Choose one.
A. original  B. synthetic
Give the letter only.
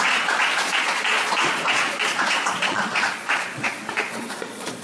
B